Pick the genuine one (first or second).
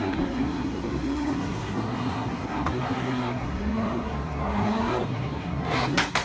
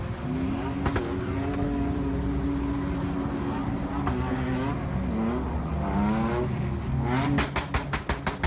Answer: second